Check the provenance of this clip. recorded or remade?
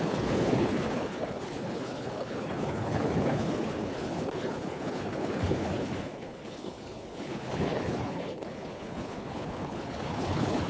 remade